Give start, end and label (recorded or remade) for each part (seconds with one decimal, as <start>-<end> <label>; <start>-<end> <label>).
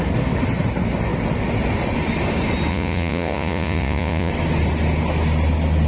0.0-2.7 recorded; 2.7-4.3 remade; 4.3-5.9 recorded